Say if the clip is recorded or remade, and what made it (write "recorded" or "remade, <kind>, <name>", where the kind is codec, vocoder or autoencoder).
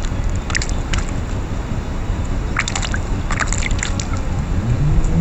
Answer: recorded